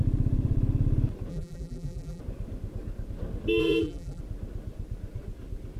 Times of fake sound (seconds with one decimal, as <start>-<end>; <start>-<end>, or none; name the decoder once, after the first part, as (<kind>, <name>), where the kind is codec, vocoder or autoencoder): 1.3-2.2 (vocoder, BigVGAN v2); 3.6-4.2